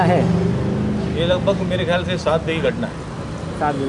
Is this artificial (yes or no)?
no